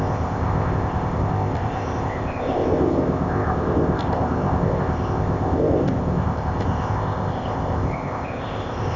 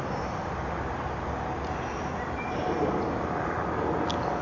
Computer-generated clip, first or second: first